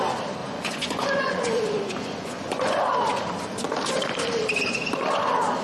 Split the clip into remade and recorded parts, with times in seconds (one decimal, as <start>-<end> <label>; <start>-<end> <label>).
0.0-0.4 recorded; 0.4-2.8 remade; 2.8-5.6 recorded